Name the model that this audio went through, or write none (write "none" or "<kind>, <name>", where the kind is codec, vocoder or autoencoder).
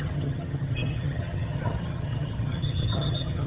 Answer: vocoder, HiFi-GAN